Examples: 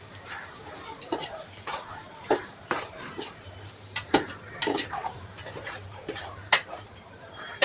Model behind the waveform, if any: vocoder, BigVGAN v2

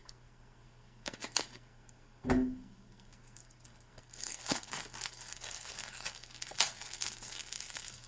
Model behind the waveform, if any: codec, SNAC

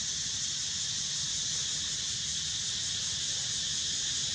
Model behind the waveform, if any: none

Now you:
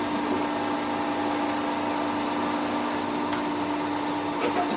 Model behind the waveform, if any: none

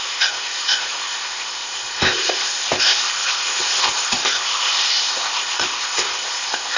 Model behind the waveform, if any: codec, ZipCodec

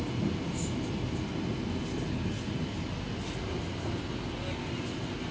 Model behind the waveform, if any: none